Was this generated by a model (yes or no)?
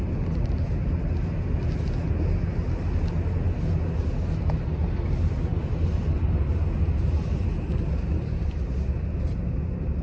no